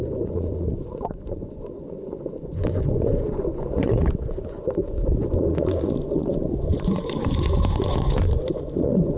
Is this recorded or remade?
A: remade